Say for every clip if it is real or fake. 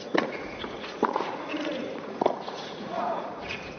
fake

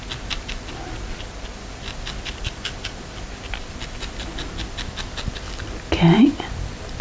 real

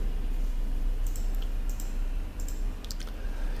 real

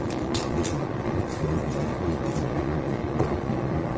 fake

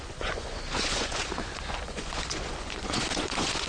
fake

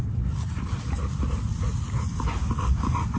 real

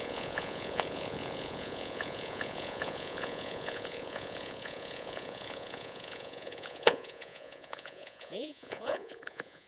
fake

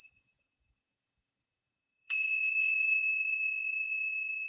fake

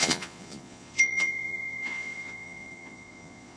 fake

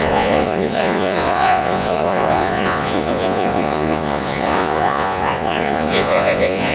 fake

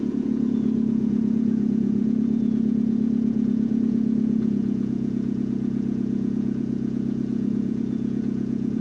fake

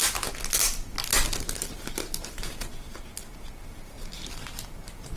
real